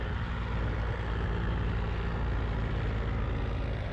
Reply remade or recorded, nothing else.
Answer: recorded